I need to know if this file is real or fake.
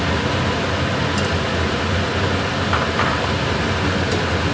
real